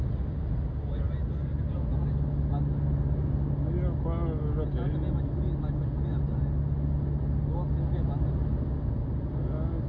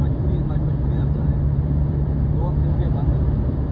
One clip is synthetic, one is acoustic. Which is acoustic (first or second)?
first